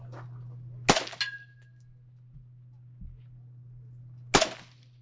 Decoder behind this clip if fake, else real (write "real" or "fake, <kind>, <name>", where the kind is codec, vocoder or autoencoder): real